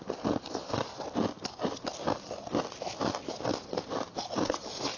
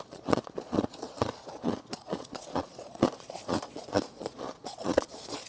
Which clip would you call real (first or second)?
first